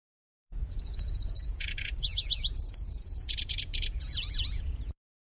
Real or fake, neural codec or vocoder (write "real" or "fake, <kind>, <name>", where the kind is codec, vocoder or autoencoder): fake, vocoder, Vocos